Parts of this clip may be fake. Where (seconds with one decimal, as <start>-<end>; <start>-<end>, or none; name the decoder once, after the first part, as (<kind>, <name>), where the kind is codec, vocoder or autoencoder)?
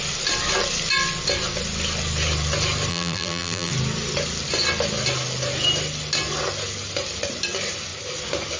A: 2.9-3.7 (vocoder, BigVGAN v2)